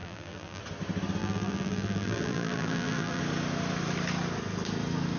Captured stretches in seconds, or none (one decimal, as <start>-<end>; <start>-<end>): 0.6-1.2; 3.2-5.2